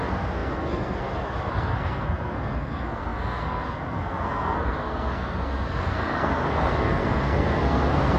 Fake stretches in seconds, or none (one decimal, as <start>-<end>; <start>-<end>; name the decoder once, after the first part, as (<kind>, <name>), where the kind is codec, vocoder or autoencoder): 0.0-8.2 (codec, SNAC)